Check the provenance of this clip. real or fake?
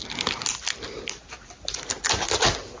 real